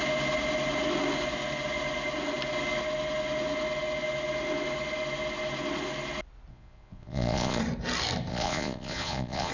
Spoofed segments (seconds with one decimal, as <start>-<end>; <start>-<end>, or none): 6.5-7.6; 8.3-9.5